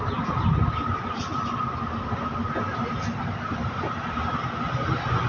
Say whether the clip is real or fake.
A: real